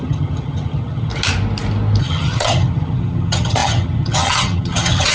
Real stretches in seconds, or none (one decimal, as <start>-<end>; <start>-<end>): 1.1-2.0